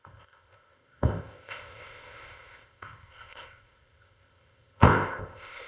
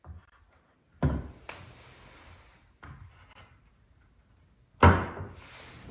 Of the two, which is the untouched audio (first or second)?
second